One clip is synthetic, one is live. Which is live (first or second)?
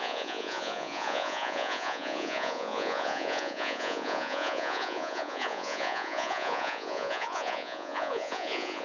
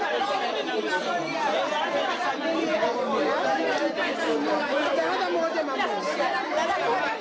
second